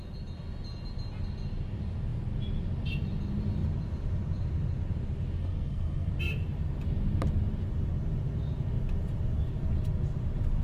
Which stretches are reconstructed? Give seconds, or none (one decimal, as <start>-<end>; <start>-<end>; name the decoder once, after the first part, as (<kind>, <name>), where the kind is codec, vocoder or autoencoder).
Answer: 5.4-6.1 (codec, SNAC)